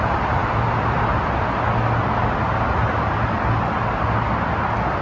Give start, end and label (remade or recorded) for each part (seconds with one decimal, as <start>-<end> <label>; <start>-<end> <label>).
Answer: 0.0-5.0 recorded